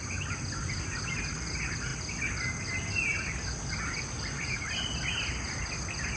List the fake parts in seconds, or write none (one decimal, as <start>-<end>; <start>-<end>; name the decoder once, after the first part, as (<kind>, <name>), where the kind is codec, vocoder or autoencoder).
none